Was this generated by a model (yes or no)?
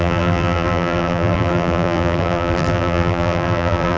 yes